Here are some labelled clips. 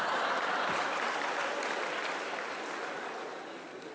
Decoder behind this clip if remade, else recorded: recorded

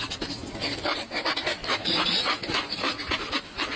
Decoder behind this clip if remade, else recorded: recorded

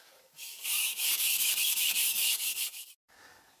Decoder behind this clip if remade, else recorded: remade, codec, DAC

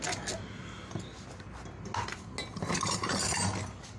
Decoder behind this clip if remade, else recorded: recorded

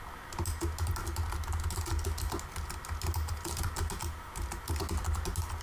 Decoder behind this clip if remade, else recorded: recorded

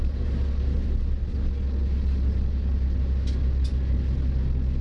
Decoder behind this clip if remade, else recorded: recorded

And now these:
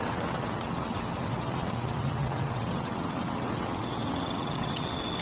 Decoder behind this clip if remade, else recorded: remade, vocoder, WaveNeXt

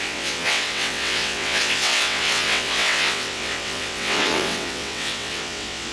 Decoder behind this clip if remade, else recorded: remade, vocoder, WaveNeXt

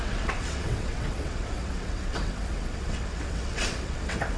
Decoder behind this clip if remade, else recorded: remade, vocoder, WaveNeXt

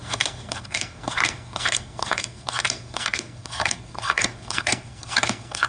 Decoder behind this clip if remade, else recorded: remade, codec, SNAC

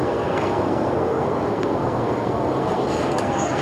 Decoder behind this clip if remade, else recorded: remade, codec, SNAC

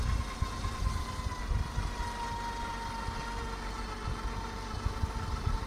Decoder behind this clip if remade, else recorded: recorded